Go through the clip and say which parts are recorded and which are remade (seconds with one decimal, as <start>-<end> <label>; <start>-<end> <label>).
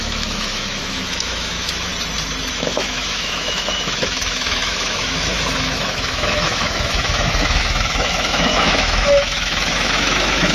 0.0-1.9 remade; 1.9-2.5 recorded; 2.5-10.5 remade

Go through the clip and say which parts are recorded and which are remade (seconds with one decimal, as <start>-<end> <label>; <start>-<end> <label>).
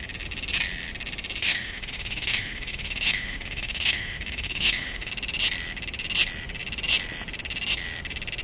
0.0-1.4 recorded; 1.4-5.1 remade; 5.1-8.4 recorded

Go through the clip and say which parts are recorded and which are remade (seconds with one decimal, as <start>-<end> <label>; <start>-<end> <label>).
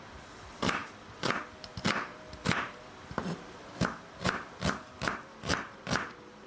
0.0-6.5 recorded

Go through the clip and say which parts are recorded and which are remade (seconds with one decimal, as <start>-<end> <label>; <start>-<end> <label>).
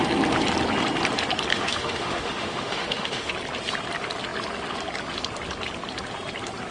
0.0-1.5 recorded; 1.5-3.3 remade; 3.3-6.7 recorded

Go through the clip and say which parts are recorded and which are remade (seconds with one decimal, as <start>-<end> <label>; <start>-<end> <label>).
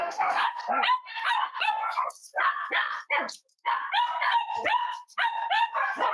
0.0-0.6 remade; 0.6-6.1 recorded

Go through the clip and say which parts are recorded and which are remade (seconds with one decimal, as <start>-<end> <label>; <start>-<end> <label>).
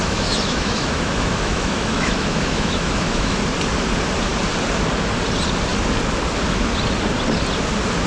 0.0-3.4 remade; 3.4-8.1 recorded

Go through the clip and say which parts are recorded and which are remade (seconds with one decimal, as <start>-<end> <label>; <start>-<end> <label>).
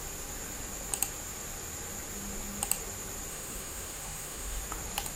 0.0-3.3 recorded; 3.3-4.6 remade; 4.6-5.2 recorded